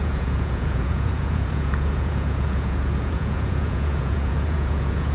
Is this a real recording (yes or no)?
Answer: no